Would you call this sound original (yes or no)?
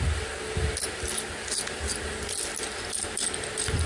yes